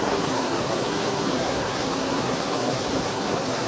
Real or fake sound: fake